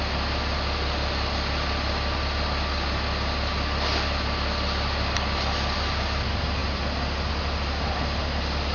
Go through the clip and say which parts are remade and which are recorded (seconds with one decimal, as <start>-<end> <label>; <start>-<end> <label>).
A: 0.0-8.7 recorded